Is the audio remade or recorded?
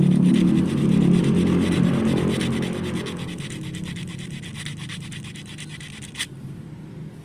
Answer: recorded